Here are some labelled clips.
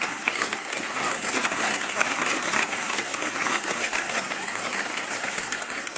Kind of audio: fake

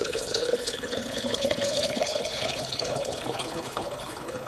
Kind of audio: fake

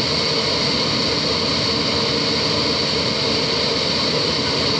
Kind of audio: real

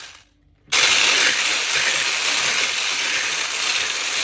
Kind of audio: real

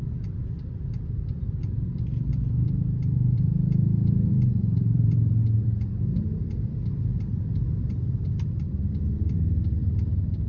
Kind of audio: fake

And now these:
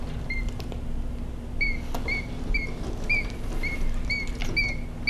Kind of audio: real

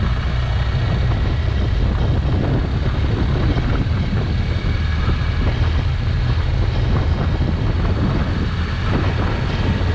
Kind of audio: real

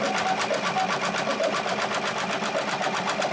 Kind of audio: real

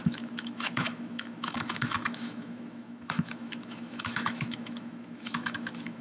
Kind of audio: fake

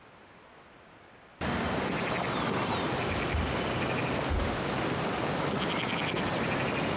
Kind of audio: real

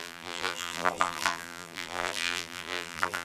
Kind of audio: fake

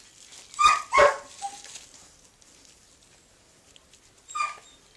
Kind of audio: real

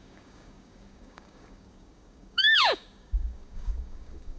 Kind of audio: fake